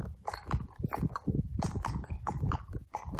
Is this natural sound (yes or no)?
yes